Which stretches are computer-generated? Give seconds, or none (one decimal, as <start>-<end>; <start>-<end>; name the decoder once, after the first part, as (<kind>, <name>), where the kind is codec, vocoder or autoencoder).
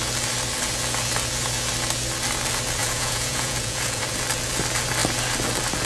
2.8-4.0 (vocoder, Vocos)